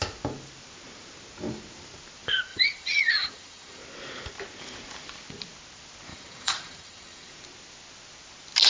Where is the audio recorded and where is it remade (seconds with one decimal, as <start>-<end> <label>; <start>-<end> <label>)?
0.0-2.5 recorded; 2.5-3.8 remade; 3.8-6.1 recorded; 6.1-7.3 remade; 7.3-8.7 recorded